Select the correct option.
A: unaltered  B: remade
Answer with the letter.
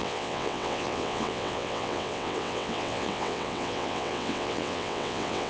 B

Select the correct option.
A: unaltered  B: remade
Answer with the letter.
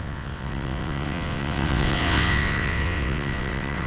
B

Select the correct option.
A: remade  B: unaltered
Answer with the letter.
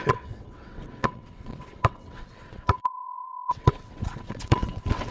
A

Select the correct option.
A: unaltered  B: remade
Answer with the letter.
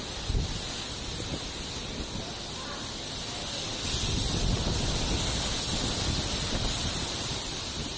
A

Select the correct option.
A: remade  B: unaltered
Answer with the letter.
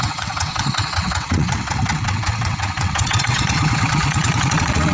A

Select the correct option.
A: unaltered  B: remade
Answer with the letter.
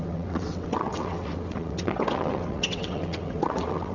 B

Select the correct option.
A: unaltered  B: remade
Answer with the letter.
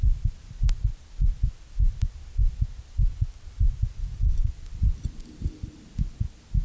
A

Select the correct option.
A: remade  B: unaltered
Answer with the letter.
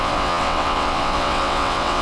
A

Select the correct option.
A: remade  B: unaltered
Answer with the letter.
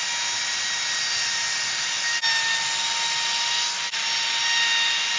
B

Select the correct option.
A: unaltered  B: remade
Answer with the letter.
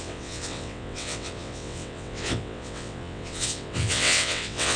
B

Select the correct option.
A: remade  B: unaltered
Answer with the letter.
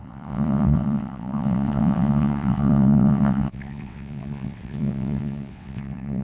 A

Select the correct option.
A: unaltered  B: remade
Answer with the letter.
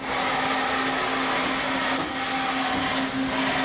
A